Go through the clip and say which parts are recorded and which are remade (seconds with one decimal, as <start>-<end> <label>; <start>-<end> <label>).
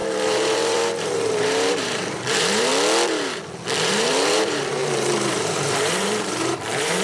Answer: 0.0-2.7 remade; 2.7-3.8 recorded; 3.8-7.0 remade